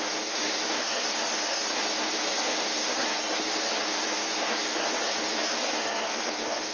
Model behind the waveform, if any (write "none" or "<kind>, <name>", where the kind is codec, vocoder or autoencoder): codec, SNAC